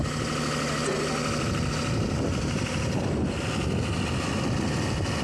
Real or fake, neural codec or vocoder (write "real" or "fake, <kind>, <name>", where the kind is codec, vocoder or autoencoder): real